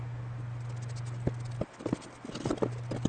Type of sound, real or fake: real